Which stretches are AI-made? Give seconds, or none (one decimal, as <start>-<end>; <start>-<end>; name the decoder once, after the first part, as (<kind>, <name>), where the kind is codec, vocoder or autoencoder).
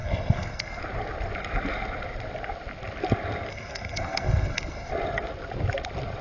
0.0-0.8 (codec, SNAC); 3.5-4.9